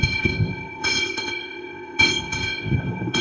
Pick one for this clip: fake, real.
fake